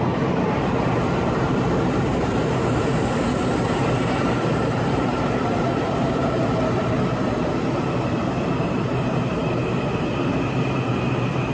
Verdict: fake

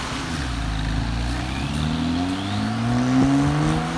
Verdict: real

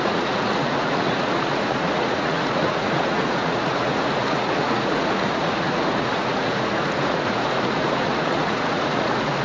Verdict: fake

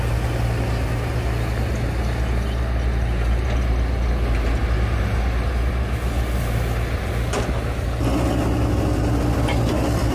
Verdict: real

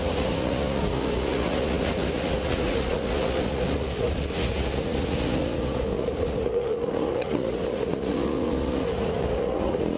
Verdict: fake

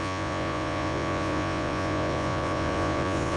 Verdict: fake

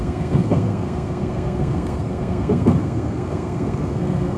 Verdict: fake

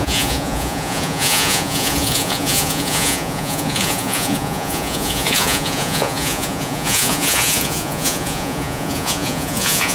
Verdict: fake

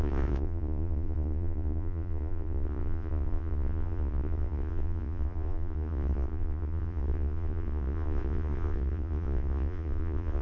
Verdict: fake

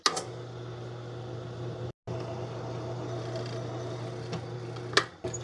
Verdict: real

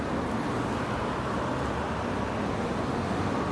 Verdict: real